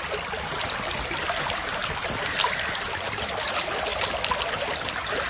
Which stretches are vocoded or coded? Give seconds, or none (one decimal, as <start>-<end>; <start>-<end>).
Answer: none